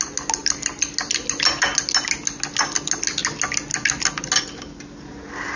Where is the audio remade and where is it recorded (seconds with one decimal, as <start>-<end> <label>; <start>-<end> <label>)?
0.0-5.6 recorded